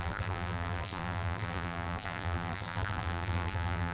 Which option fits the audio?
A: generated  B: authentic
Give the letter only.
A